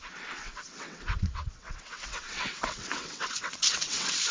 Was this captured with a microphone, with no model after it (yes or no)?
no